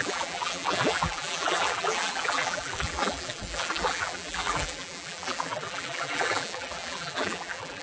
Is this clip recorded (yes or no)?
no